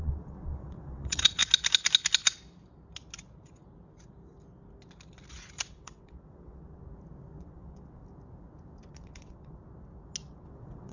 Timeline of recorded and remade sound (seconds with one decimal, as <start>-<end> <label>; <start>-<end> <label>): 0.0-1.4 remade; 1.4-5.7 recorded; 5.7-6.8 remade; 6.8-7.4 recorded; 7.4-8.0 remade; 8.0-8.9 recorded; 8.9-9.6 remade; 9.6-10.3 recorded; 10.3-10.9 remade